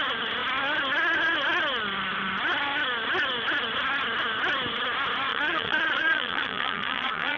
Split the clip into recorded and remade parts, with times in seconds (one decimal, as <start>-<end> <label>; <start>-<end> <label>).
0.0-5.3 recorded; 5.3-7.4 remade